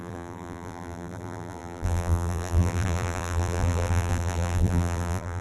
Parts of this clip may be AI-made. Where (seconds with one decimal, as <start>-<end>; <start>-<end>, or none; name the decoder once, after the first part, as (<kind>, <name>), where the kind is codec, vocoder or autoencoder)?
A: 0.0-5.4 (vocoder, BigVGAN v2)